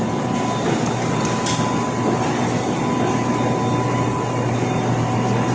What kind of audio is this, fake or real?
real